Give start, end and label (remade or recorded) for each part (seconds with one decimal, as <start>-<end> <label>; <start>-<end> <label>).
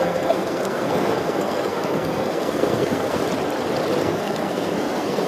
0.0-3.2 remade; 3.2-4.0 recorded; 4.0-5.3 remade